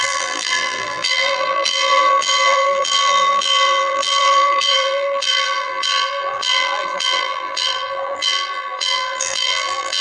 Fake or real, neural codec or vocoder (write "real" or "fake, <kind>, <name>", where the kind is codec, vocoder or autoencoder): fake, vocoder, BigVGAN v2